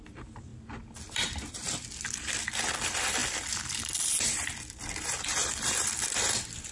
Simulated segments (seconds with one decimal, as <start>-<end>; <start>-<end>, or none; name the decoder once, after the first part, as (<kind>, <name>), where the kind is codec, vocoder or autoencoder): 0.0-6.7 (vocoder, BigVGAN v2)